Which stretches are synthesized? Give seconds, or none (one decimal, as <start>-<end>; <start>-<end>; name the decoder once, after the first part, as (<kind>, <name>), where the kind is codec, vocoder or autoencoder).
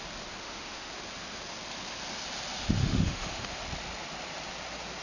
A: 0.4-0.9 (autoencoder, DAC-VAE); 2.8-3.6